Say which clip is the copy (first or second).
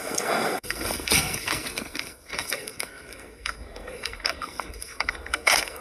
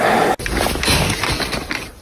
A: first